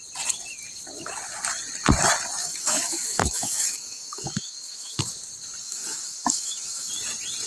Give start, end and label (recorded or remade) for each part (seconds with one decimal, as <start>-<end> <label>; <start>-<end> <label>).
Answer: 0.0-2.4 recorded; 2.4-5.0 remade; 5.0-5.6 recorded; 5.6-6.9 remade; 6.9-7.5 recorded